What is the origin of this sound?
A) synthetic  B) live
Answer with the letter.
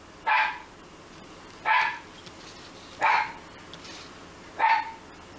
B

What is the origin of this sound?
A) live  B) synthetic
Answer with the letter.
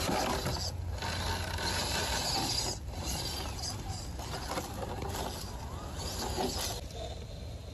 A